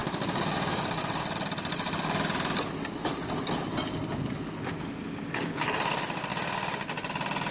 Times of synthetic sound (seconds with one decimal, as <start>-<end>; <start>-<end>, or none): none